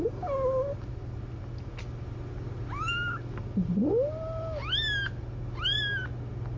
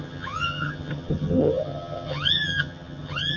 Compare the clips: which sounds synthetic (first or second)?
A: second